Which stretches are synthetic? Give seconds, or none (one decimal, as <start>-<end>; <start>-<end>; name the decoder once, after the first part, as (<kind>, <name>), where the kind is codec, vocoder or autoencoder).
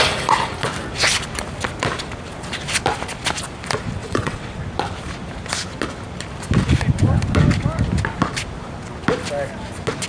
4.0-4.6 (vocoder, WaveNeXt)